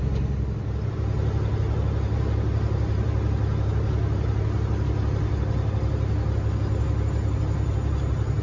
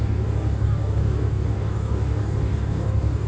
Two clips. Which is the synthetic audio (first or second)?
second